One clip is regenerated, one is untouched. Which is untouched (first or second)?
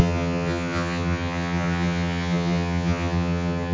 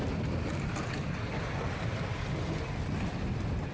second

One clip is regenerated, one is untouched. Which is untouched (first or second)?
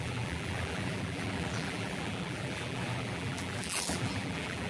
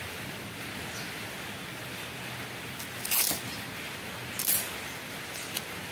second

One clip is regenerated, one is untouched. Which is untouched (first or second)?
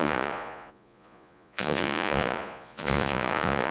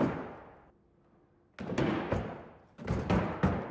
second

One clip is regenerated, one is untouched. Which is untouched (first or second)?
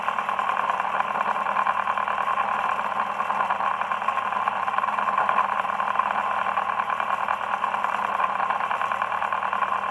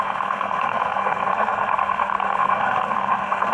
first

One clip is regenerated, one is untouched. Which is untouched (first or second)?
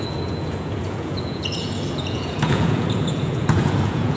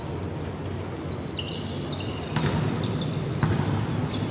second